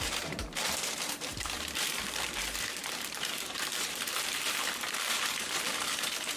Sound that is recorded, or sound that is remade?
remade